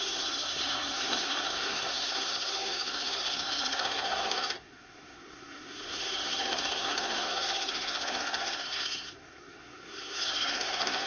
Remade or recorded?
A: remade